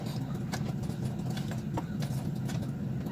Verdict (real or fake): real